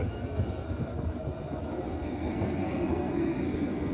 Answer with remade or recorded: remade